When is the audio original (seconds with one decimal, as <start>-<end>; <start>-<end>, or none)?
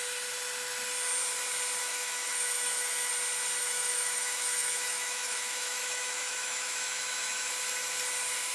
0.0-1.8; 3.1-3.6; 7.5-8.5